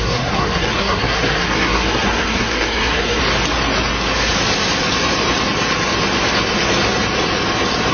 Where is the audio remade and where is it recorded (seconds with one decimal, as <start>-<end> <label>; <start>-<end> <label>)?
0.0-3.2 remade; 3.2-7.9 recorded